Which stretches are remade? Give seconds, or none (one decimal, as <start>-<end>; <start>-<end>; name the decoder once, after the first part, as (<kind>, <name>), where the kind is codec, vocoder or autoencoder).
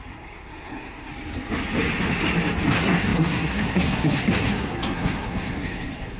0.0-1.1 (codec, SNAC); 2.7-6.2